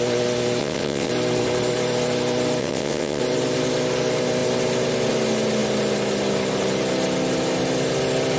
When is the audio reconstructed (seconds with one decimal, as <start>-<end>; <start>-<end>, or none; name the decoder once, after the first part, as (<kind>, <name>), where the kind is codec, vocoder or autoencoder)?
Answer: 0.6-1.1 (vocoder, WaveNeXt); 2.6-3.2